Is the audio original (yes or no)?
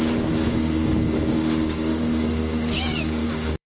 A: no